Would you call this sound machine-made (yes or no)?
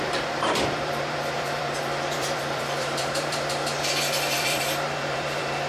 yes